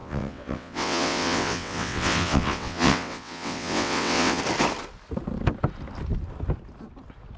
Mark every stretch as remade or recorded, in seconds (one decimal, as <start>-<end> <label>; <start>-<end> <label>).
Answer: 0.0-4.4 remade; 4.4-7.4 recorded